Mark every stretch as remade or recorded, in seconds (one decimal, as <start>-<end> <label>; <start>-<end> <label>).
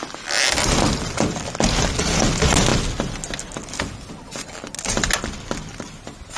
0.0-6.4 recorded